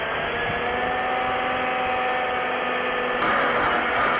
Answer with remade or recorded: recorded